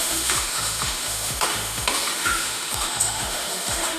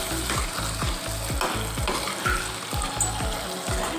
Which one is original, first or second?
second